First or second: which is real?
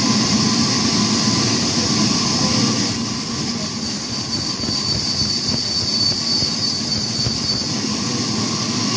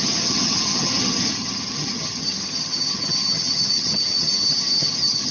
first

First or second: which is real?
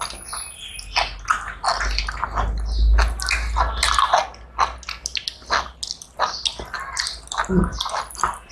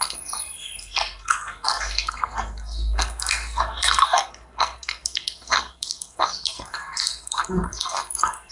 first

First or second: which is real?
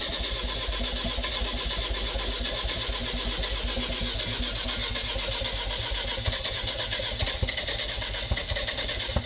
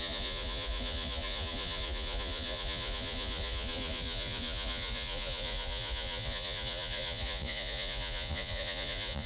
first